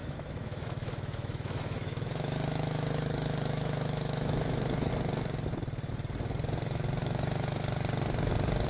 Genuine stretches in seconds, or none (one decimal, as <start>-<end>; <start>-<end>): 4.9-7.0; 7.6-8.7